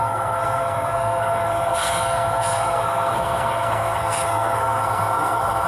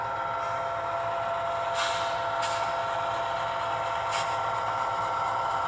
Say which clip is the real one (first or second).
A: second